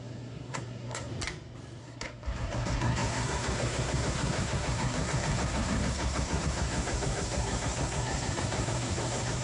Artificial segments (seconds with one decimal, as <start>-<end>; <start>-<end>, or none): 0.0-1.1; 1.8-9.4